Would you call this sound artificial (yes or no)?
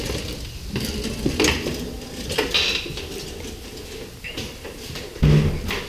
no